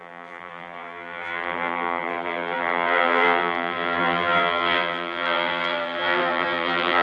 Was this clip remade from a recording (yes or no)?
yes